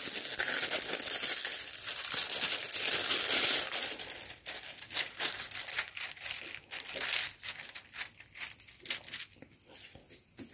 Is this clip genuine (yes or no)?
yes